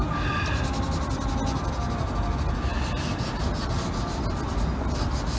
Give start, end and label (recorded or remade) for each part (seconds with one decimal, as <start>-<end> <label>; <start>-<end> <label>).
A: 0.0-2.7 recorded; 2.7-3.8 remade; 3.8-5.4 recorded